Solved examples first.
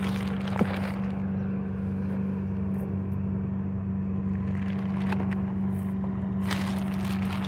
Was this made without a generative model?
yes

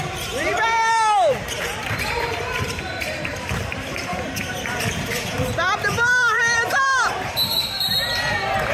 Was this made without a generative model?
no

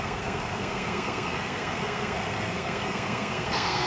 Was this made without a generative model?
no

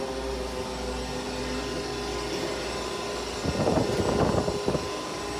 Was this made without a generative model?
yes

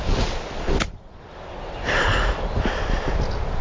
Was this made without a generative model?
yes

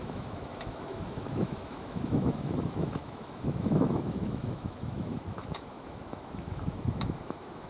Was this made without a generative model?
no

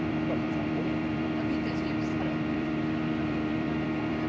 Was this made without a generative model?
no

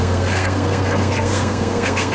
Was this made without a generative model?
no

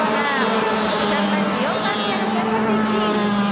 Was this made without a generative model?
yes